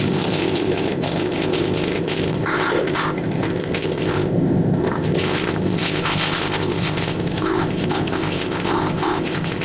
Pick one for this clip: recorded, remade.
remade